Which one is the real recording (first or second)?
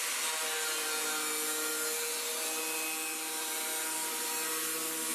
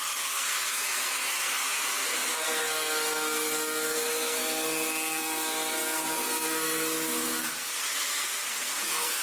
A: first